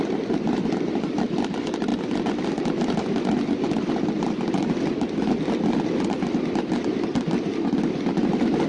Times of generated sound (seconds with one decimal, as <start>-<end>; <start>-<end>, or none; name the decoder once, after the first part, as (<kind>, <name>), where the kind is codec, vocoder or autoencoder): none